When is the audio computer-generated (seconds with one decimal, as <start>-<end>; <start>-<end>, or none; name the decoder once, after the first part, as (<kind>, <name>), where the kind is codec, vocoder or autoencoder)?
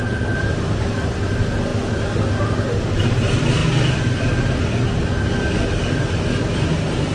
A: none